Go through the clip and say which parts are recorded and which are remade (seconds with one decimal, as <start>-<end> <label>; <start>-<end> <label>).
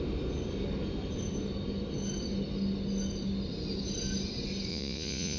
0.0-4.7 recorded; 4.7-5.4 remade